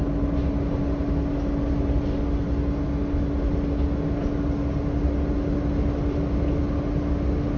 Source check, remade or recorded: recorded